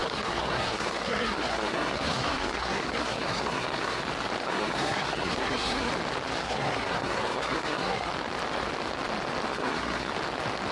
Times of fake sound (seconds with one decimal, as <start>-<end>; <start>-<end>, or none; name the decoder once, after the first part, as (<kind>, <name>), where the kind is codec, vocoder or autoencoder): 0.0-4.0 (codec, SNAC); 4.4-5.9; 6.4-8.1; 9.5-10.1